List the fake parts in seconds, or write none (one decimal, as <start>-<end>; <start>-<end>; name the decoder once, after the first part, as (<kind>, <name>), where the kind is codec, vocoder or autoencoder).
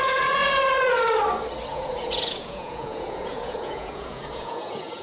0.0-0.4 (vocoder, Vocos); 1.7-5.0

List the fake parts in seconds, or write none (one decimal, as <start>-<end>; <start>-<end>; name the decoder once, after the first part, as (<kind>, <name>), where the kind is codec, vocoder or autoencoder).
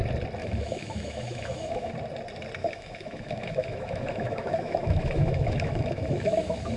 0.4-1.9 (autoencoder, DAC-VAE); 2.6-6.8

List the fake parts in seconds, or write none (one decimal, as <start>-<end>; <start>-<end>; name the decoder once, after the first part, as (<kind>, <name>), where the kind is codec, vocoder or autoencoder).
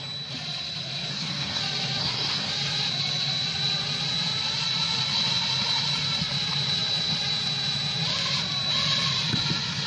1.1-1.6 (codec, SNAC); 2.0-2.5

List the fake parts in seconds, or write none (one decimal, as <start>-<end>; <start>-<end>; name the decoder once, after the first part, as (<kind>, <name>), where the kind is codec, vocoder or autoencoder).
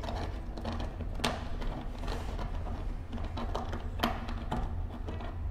1.5-2.3 (vocoder, BigVGAN v2)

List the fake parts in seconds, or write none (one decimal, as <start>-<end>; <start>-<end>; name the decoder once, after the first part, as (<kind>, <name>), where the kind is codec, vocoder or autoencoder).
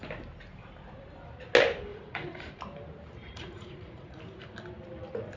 1.9-2.6 (vocoder, Vocos); 3.2-4.2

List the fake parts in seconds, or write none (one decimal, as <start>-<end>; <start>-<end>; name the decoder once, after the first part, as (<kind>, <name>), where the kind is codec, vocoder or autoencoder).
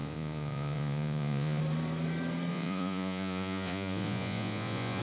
0.0-1.6 (vocoder, Vocos); 2.5-5.0